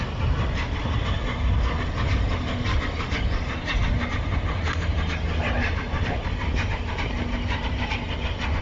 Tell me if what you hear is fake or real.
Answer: real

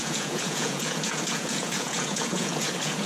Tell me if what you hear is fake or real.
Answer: fake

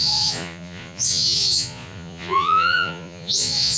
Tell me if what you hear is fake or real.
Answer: fake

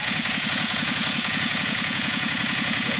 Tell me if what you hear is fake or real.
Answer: fake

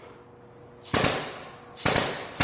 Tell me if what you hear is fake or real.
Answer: real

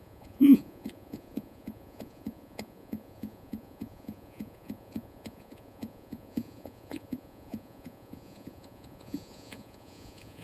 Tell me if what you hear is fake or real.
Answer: fake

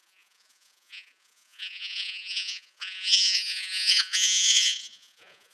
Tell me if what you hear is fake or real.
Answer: fake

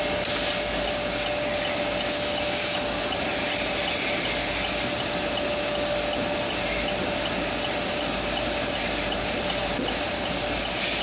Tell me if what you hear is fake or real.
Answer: real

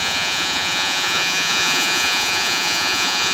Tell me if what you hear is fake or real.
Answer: fake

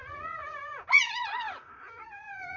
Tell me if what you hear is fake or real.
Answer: fake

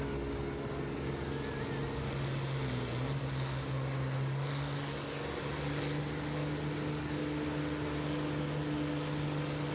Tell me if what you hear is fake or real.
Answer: real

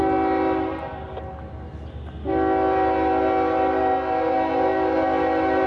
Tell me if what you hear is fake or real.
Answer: real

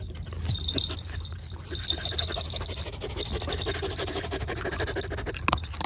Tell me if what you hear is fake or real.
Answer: real